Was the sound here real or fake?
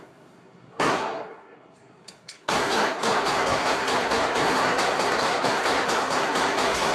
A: fake